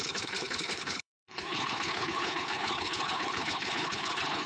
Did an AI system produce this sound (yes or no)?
yes